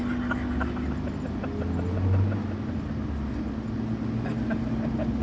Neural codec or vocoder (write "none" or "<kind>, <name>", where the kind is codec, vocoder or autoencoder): none